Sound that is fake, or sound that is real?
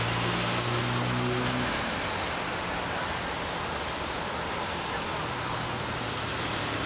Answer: real